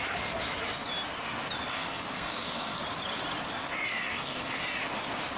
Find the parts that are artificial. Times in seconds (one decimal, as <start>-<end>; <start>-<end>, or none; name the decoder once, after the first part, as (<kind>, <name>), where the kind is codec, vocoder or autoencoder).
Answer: 1.7-2.8 (codec, SNAC); 4.1-4.6